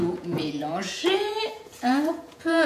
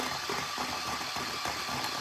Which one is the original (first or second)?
second